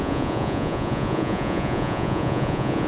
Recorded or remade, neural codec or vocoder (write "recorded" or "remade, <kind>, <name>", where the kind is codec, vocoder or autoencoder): remade, vocoder, Vocos